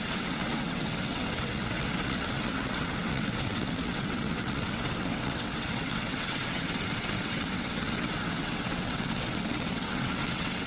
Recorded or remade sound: remade